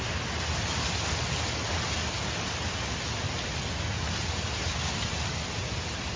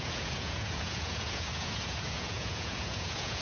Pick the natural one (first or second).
first